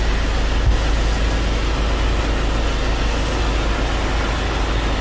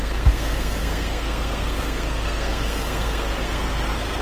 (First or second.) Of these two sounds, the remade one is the second